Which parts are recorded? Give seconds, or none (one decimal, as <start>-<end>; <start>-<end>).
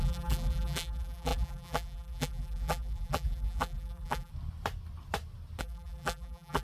4.3-5.6